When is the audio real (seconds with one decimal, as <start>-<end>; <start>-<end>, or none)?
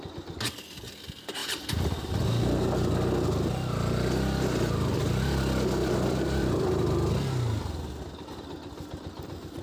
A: 0.0-1.4; 2.5-5.8; 8.1-9.6